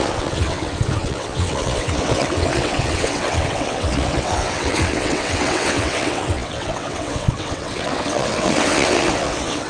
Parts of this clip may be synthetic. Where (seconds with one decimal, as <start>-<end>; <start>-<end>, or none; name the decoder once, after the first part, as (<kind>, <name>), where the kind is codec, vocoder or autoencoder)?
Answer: 0.0-9.7 (vocoder, WaveNeXt)